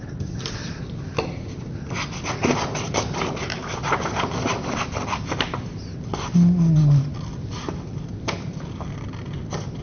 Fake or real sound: real